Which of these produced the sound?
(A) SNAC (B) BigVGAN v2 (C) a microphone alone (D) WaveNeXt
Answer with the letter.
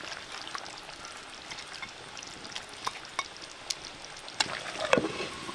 C